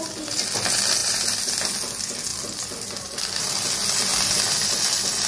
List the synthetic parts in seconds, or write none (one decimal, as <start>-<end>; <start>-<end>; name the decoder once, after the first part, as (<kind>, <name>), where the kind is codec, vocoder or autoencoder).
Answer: 1.0-1.6 (vocoder, BigVGAN v2); 2.3-3.5; 4.1-4.8